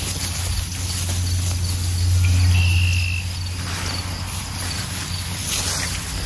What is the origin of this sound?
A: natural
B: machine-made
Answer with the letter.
A